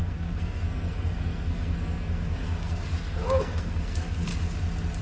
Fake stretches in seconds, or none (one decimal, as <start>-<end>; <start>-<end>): 0.0-4.3